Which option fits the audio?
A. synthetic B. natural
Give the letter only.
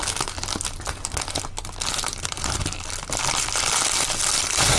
B